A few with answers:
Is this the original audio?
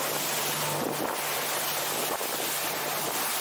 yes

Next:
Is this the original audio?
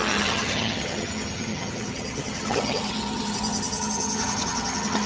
no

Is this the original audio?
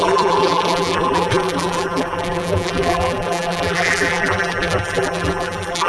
no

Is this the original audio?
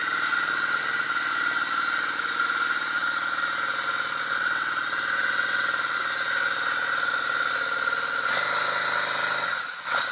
yes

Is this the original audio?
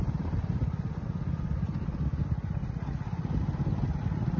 no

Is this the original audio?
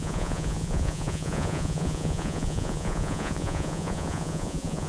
no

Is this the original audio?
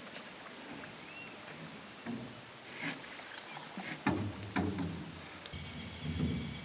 yes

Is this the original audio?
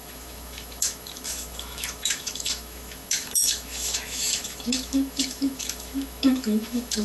no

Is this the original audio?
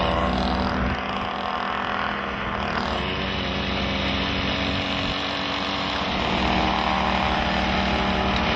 yes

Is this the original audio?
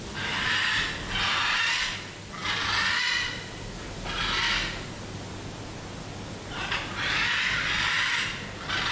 yes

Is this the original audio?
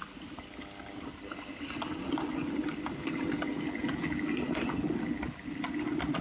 yes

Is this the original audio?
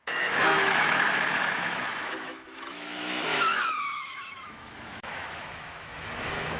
no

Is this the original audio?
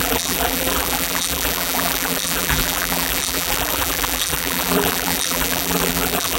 no